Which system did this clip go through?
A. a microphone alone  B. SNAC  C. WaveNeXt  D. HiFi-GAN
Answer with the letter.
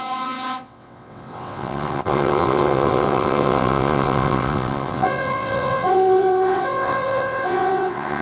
C